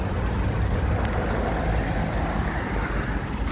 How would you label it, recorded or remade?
recorded